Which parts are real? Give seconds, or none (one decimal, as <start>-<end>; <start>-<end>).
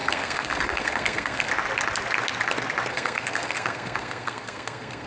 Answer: 1.5-2.9